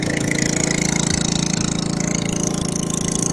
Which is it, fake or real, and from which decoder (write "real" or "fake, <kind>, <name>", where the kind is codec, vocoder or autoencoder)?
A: real